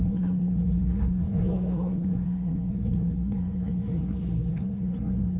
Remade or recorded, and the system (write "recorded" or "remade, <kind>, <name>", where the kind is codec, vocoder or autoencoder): remade, codec, SNAC